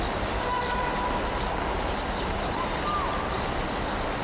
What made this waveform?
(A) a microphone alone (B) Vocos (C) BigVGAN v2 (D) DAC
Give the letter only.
A